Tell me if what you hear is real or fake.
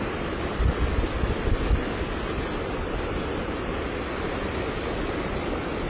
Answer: real